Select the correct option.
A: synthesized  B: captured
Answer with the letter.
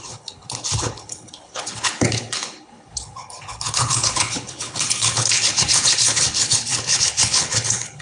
A